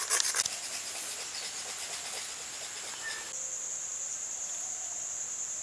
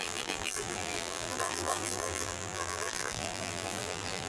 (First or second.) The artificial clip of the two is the second